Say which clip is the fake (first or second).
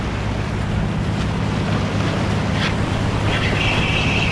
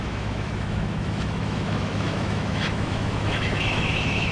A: second